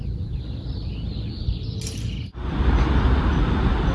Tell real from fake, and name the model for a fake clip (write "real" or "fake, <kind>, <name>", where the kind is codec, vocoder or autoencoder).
real